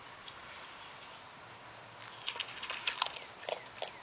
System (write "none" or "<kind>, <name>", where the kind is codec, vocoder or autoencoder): none